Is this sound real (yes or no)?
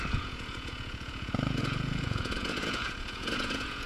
no